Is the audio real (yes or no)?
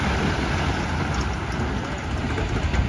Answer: yes